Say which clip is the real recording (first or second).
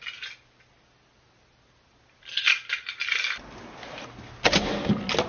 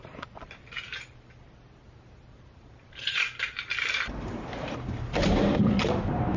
first